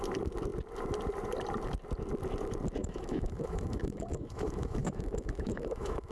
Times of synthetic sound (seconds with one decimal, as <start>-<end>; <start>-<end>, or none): 2.8-6.1